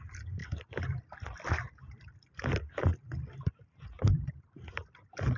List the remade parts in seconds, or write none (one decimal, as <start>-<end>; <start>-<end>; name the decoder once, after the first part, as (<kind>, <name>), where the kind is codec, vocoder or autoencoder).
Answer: none